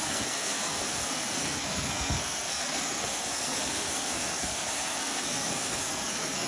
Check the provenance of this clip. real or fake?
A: fake